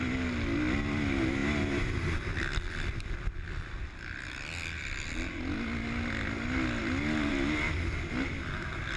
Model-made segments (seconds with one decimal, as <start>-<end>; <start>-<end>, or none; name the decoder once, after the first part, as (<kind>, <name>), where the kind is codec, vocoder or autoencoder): none